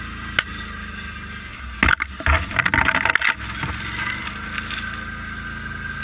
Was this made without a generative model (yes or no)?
yes